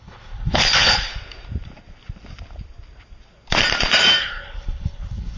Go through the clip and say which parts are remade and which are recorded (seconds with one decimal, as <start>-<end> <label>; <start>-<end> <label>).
0.0-1.1 remade; 1.1-4.2 recorded; 4.2-5.4 remade